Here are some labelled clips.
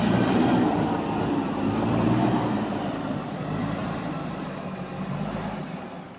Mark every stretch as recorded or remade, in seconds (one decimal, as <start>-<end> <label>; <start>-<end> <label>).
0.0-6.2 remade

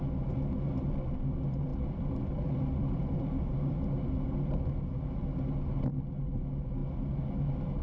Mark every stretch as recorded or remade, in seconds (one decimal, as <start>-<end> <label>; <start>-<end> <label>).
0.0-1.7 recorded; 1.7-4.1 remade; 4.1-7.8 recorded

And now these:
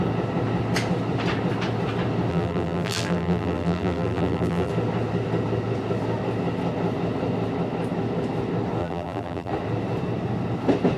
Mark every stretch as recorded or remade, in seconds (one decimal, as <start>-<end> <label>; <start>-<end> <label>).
0.0-2.3 recorded; 2.3-4.7 remade; 4.7-8.8 recorded; 8.8-9.5 remade; 9.5-11.0 recorded

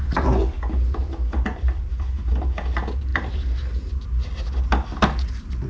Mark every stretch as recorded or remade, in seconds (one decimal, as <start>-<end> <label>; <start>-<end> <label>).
0.0-1.0 recorded; 1.0-2.1 remade; 2.1-3.1 recorded; 3.1-3.9 remade; 3.9-5.7 recorded

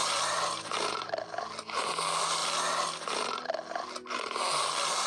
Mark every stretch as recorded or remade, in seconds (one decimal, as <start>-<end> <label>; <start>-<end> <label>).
0.0-1.2 remade; 1.2-5.1 recorded

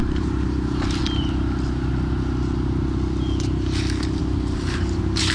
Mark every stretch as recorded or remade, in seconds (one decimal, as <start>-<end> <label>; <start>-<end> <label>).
0.0-1.0 remade; 1.0-4.2 recorded; 4.2-5.3 remade